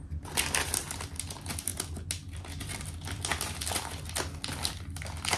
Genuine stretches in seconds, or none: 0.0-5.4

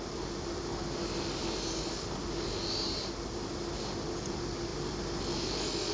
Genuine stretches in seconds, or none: 0.0-5.9